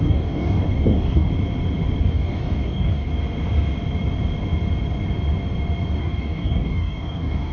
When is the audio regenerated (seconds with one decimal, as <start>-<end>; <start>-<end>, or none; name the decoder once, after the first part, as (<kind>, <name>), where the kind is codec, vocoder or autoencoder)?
0.0-1.3 (codec, DAC); 2.0-3.1; 6.0-7.5